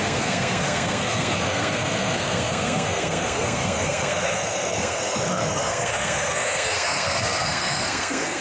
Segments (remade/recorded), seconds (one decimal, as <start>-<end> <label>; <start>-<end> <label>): 0.0-8.4 remade